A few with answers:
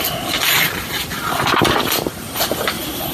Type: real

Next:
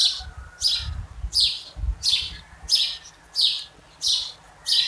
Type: real